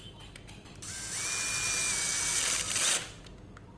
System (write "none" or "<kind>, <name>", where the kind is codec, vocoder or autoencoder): none